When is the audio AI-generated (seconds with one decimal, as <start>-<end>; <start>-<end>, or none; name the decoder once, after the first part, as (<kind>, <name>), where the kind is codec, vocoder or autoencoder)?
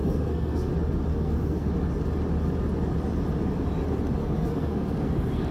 0.0-0.7 (codec, SNAC); 1.1-1.7; 4.2-5.5